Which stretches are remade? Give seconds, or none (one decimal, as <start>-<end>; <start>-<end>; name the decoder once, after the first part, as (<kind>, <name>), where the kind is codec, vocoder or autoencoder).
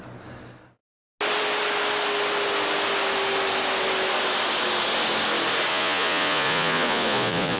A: 5.7-7.6 (vocoder, Vocos)